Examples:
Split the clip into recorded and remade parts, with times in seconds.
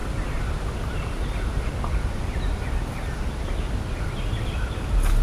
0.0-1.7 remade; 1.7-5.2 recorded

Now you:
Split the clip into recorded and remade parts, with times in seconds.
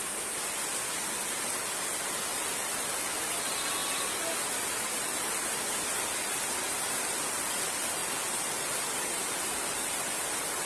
0.0-2.3 recorded; 2.3-2.9 remade; 2.9-3.8 recorded; 3.8-7.6 remade; 7.6-8.0 recorded; 8.0-10.0 remade; 10.0-10.7 recorded